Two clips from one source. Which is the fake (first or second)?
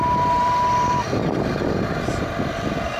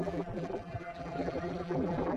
second